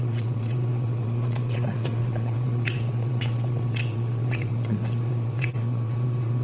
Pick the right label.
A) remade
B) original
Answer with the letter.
A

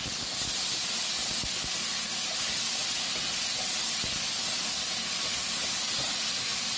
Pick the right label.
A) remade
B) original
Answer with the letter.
B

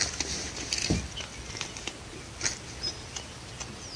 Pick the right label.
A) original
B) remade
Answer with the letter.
A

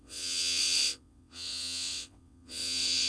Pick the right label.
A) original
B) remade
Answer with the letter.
B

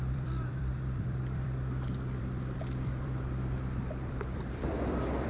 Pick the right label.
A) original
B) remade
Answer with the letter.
B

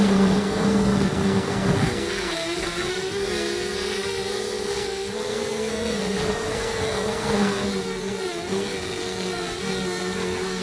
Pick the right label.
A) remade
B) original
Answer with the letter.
A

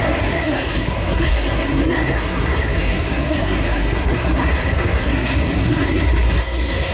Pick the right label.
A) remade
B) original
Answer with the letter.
A